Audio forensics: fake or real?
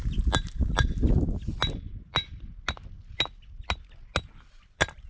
real